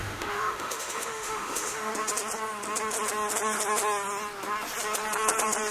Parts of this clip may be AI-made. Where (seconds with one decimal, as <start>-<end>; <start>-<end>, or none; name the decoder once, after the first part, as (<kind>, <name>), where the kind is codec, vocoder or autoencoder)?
0.0-1.9 (autoencoder, DAC-VAE)